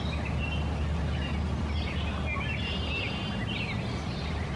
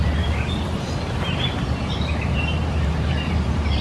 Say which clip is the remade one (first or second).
second